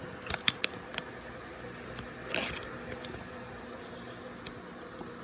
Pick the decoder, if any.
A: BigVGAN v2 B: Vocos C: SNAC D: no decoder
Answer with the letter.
D